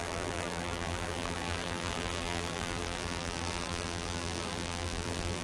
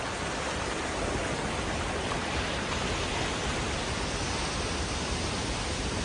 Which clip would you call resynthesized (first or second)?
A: first